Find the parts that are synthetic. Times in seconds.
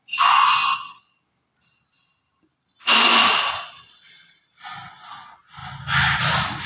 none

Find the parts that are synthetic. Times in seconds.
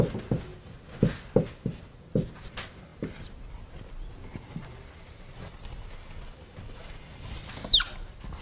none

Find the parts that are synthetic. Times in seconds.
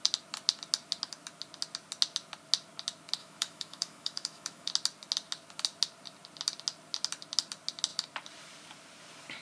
3.2-4.7 (autoencoder, DAC-VAE)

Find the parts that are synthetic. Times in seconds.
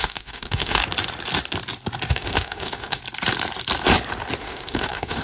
0.0-0.8 (autoencoder, DAC-VAE); 2.1-3.0; 4.4-5.2